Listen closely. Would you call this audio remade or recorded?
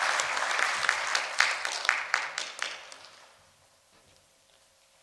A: remade